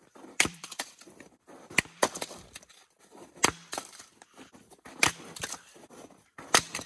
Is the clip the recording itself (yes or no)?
no